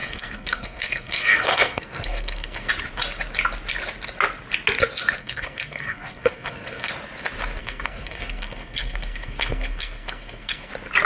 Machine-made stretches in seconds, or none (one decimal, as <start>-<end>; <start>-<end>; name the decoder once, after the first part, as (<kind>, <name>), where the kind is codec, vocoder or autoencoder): 0.0-2.7 (codec, SNAC); 5.2-6.9; 7.6-10.7